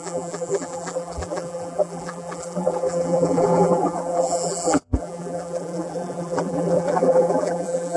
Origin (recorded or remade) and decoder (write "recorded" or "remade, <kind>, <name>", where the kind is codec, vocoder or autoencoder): remade, vocoder, BigVGAN v2